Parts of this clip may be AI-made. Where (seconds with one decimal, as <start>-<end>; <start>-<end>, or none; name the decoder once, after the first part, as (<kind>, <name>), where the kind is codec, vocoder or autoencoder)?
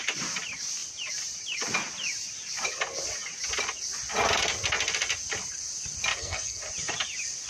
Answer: 6.1-6.6 (codec, SNAC)